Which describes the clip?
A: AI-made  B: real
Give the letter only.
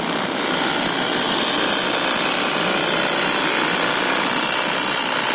B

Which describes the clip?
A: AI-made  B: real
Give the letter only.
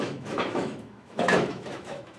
A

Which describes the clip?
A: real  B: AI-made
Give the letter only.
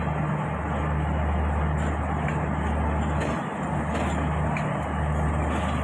A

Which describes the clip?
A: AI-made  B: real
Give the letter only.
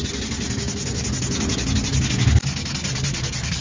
B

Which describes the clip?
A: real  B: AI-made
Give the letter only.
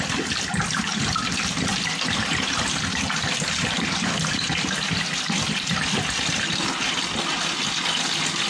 A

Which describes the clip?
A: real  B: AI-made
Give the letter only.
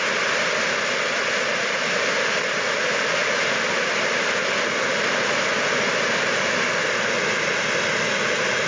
A